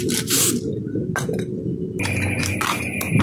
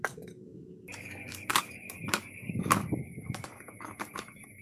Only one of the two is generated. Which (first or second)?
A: second